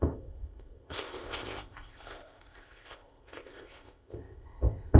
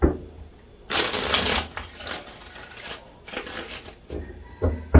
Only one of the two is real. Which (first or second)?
second